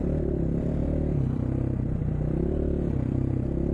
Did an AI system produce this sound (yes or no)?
yes